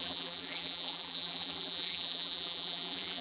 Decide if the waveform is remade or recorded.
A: remade